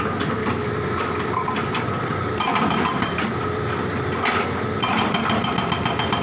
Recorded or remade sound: remade